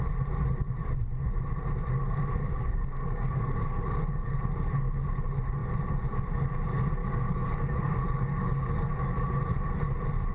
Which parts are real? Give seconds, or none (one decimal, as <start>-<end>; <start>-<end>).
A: 0.0-2.4; 4.4-7.0; 9.1-10.3